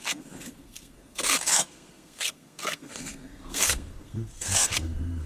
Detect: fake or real fake